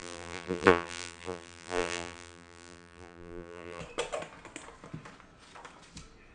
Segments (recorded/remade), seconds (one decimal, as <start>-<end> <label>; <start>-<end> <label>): 0.0-3.8 remade; 3.8-6.3 recorded